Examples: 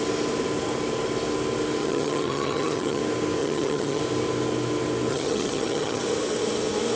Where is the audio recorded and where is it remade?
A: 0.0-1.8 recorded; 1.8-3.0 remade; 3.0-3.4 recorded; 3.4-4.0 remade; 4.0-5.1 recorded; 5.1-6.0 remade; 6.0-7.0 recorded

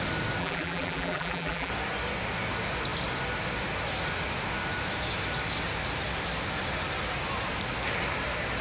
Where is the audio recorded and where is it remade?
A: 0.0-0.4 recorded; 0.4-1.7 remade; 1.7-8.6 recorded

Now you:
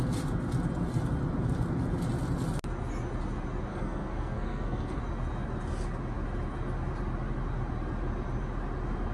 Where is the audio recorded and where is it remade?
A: 0.0-3.7 recorded; 3.7-5.0 remade; 5.0-9.1 recorded